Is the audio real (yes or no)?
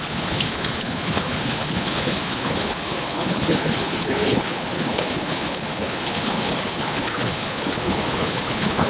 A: no